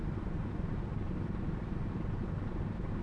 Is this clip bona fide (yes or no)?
yes